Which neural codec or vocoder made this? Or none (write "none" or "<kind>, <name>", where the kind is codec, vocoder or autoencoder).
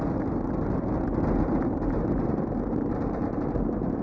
none